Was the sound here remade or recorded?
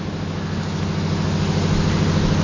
recorded